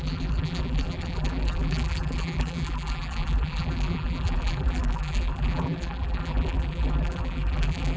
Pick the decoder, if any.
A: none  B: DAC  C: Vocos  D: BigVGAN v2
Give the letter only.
D